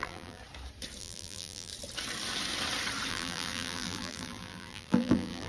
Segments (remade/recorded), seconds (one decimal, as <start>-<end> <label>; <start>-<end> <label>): 0.0-0.4 remade; 0.4-1.0 recorded; 1.0-1.7 remade; 1.7-3.1 recorded; 3.1-5.5 remade